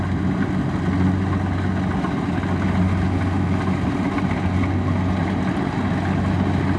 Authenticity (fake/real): real